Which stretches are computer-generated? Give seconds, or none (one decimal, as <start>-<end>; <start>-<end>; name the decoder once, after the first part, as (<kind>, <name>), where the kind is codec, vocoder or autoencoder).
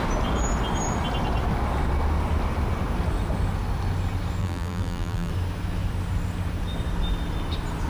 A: 4.4-5.3 (vocoder, BigVGAN v2)